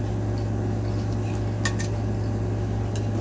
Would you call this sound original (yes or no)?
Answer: yes